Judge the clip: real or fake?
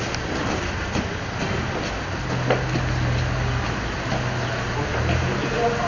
real